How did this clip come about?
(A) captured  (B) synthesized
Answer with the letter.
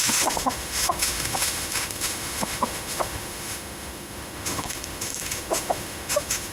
B